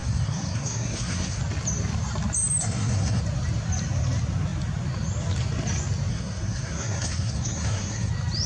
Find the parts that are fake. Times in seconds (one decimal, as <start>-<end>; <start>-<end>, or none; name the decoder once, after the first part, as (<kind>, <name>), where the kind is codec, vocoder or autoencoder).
0.0-1.4 (codec, SNAC); 2.6-3.2; 6.1-8.1